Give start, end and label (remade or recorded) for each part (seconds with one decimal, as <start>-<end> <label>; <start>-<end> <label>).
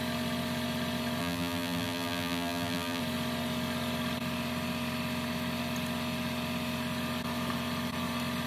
0.0-1.2 recorded; 1.2-3.0 remade; 3.0-8.5 recorded